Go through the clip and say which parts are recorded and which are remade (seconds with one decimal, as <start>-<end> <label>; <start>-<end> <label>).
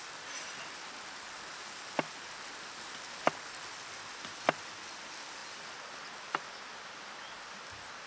0.0-8.1 recorded